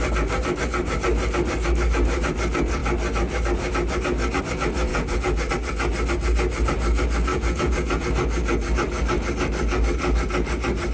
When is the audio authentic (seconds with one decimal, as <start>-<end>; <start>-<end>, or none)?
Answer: 0.0-4.9; 5.5-7.3; 8.0-10.9